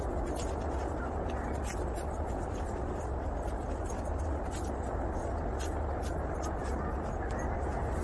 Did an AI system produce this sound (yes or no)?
no